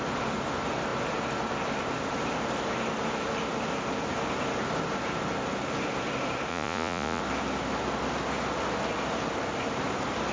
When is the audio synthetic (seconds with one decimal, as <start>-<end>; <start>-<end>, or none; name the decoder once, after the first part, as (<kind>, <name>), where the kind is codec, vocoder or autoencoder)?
6.5-7.2 (vocoder, Vocos)